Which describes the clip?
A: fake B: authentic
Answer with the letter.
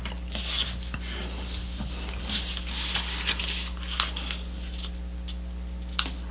B